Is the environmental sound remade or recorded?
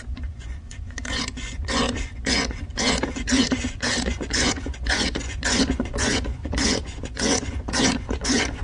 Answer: remade